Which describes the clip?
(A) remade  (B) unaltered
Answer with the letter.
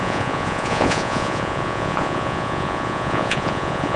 A